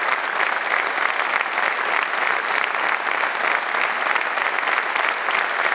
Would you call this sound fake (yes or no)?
no